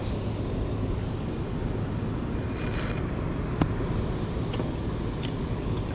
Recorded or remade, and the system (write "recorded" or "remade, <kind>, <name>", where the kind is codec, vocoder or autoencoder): recorded